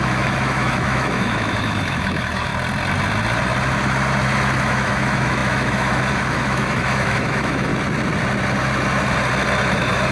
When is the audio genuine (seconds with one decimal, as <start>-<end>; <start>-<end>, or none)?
2.5-4.6; 7.7-9.7